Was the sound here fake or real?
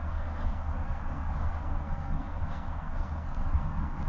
fake